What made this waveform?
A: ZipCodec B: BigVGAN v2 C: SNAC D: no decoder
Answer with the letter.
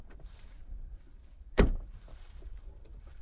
B